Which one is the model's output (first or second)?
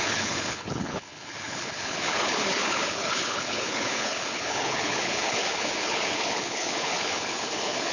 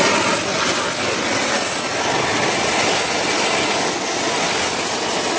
first